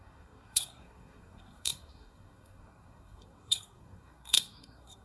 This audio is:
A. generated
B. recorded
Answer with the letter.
A